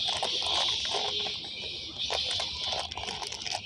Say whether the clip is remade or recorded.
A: recorded